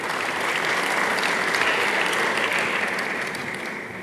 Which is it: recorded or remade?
recorded